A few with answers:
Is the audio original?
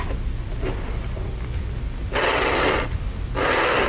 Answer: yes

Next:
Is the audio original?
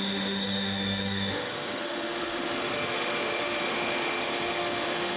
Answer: no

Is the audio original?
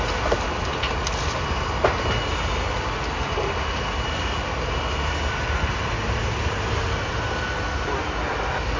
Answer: yes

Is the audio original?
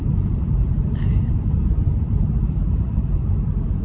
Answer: no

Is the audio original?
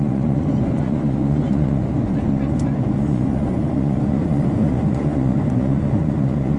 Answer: no